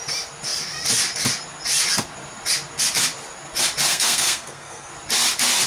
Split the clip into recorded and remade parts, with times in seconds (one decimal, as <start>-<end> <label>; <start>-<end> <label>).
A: 0.0-3.9 recorded; 3.9-4.9 remade; 4.9-5.7 recorded

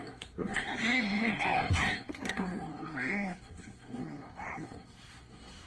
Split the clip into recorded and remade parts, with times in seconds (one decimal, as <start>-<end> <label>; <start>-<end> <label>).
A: 0.0-5.7 remade

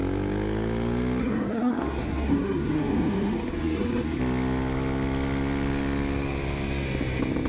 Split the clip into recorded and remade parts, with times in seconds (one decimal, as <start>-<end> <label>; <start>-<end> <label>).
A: 0.0-1.2 recorded; 1.2-4.2 remade; 4.2-7.5 recorded